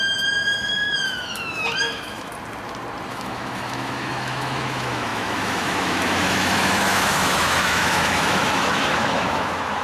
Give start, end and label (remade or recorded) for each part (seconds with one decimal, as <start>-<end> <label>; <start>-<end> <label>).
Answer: 0.0-2.3 remade; 2.3-3.1 recorded; 3.1-9.8 remade